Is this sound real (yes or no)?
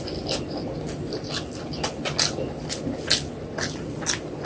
yes